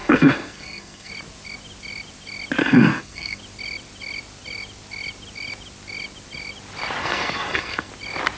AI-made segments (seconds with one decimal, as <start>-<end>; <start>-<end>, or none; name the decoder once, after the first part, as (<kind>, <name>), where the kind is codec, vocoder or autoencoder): 0.0-1.1 (codec, SNAC); 2.6-3.4; 7.0-7.9